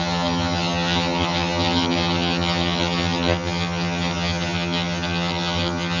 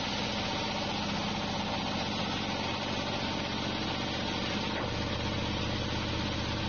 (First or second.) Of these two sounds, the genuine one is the second